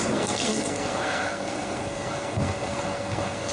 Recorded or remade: remade